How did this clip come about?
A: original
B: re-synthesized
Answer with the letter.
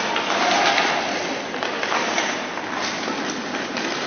A